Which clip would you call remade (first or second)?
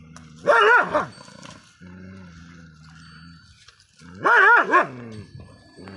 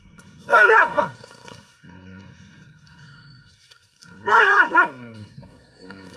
second